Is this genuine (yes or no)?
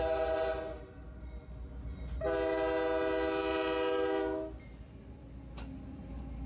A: yes